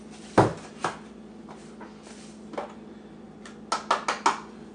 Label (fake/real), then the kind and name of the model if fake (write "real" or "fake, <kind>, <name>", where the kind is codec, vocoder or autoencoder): real